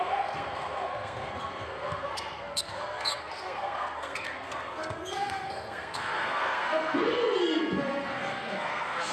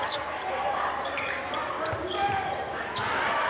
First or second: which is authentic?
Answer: second